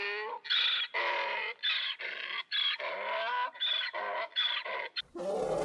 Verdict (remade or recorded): recorded